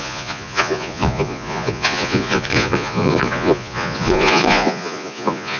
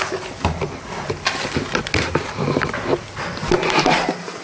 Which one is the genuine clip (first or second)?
second